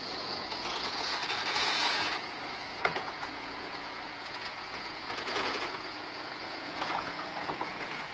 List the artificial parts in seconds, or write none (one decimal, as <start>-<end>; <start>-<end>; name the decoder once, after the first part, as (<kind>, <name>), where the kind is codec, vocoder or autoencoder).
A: 0.0-8.1 (vocoder, Vocos)

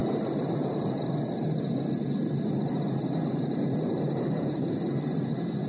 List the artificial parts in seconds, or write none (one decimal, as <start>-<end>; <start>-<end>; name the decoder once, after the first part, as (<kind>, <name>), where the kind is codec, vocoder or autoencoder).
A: none

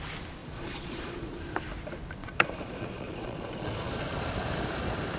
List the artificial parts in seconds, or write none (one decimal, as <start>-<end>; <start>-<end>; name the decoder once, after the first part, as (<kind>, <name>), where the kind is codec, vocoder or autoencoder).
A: 0.4-1.4 (vocoder, Vocos); 2.2-4.0

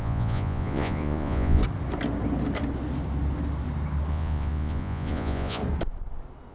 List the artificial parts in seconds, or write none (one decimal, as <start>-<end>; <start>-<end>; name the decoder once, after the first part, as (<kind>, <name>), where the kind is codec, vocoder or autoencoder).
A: 0.0-1.6 (vocoder, Vocos); 4.1-5.6

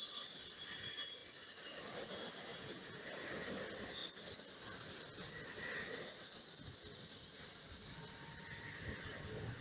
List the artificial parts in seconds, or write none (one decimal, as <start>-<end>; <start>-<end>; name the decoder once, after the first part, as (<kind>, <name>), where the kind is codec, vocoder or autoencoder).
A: 2.5-3.0 (vocoder, Vocos)

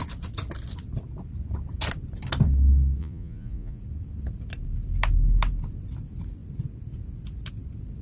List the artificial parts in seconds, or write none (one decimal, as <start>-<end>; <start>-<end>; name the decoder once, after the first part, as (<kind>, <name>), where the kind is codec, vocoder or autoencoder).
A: 3.0-3.8 (vocoder, Vocos)